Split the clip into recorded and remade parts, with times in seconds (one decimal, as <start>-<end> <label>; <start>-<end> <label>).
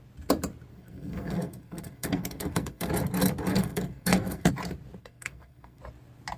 0.0-0.7 recorded; 0.7-2.9 remade; 2.9-3.5 recorded; 3.5-4.5 remade; 4.5-5.0 recorded; 5.0-5.8 remade; 5.8-6.4 recorded